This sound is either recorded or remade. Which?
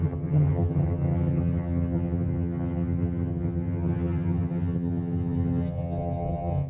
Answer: remade